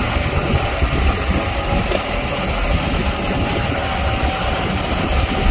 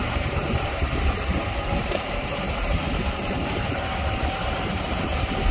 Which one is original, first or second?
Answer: first